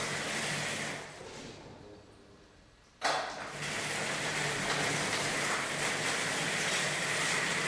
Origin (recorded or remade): recorded